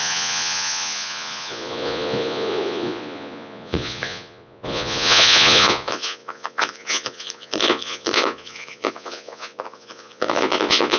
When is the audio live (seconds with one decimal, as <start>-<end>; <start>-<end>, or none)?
none